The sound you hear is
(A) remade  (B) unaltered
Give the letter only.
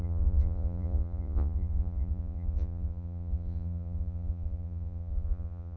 A